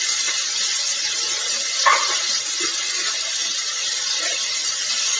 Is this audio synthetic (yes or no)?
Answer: no